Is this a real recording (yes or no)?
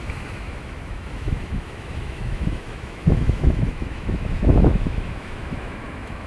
no